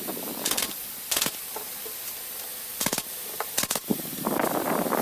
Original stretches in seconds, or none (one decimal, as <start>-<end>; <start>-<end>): 0.0-2.7